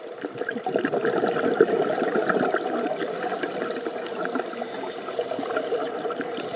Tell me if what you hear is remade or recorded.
recorded